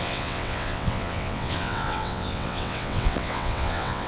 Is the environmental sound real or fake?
fake